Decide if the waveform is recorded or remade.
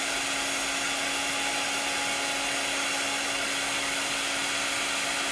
recorded